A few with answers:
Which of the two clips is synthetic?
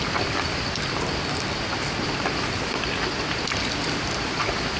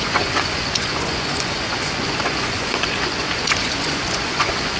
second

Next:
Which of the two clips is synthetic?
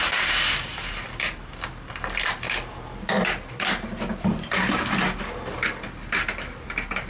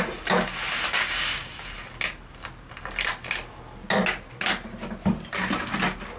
first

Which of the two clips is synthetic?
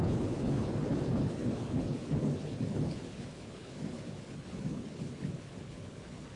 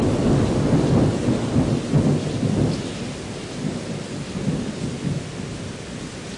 first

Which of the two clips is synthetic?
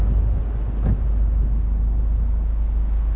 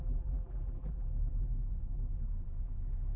second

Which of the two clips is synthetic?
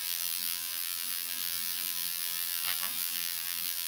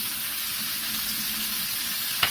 first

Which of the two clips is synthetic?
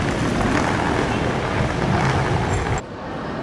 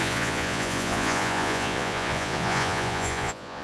second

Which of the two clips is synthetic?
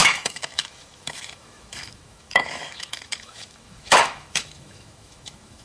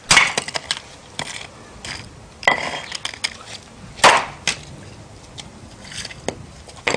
first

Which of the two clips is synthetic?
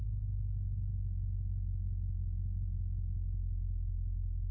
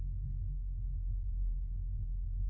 second